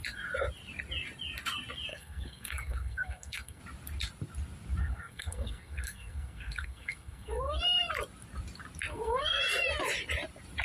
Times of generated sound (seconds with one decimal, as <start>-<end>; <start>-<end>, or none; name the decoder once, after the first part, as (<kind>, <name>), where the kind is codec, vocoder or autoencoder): 1.9-3.6 (codec, SNAC); 4.8-7.6; 8.9-9.4